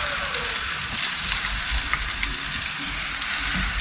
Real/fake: real